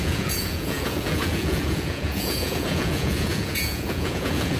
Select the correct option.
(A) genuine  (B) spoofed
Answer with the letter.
B